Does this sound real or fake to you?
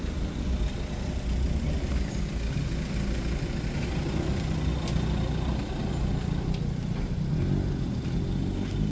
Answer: real